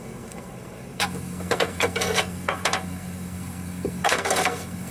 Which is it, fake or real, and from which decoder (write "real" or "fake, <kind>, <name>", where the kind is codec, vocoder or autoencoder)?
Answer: fake, codec, SNAC